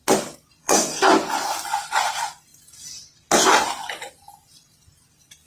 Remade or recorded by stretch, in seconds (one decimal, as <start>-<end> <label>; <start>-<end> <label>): 0.0-0.6 recorded; 0.6-1.1 remade; 1.1-5.5 recorded